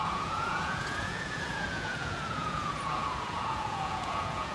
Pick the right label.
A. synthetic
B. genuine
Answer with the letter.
A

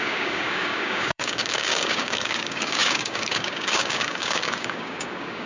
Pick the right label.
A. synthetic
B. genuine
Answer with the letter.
A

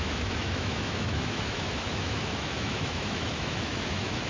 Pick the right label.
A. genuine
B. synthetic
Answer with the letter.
B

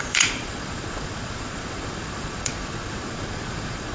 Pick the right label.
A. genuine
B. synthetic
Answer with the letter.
B